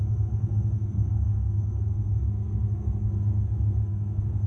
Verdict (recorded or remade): remade